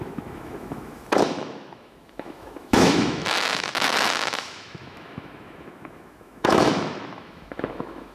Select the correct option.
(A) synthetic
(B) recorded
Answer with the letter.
A